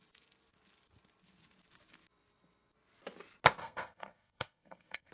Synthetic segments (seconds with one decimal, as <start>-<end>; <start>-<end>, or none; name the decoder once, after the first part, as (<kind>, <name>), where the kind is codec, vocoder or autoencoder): 3.6-5.1 (codec, SNAC)